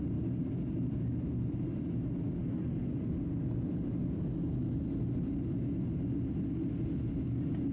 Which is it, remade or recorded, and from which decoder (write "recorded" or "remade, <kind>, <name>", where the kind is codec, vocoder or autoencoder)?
recorded